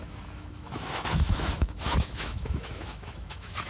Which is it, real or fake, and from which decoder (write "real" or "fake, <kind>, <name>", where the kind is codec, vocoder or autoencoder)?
fake, autoencoder, DAC-VAE